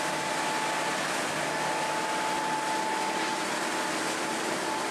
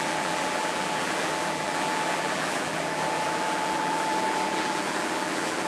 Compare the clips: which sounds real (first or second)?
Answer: first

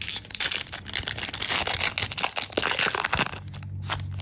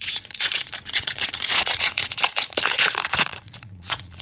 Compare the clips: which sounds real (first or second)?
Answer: first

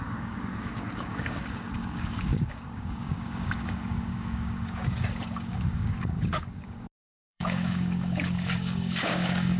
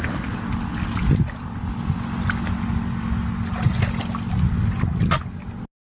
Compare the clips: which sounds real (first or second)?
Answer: second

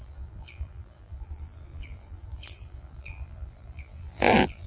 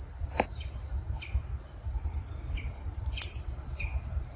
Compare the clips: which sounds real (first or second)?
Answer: second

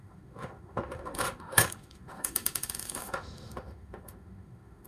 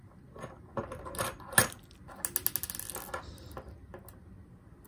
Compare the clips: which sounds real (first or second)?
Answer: second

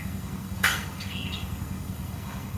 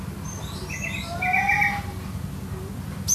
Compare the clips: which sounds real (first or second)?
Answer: second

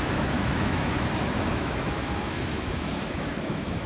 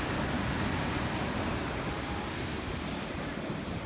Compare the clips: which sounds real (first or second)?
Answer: second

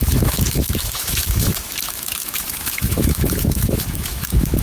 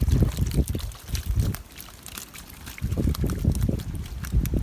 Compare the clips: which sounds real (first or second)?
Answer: second